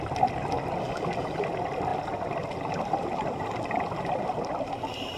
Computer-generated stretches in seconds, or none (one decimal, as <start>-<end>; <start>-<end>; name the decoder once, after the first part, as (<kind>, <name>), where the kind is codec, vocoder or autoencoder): none